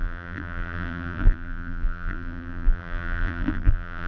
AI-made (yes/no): yes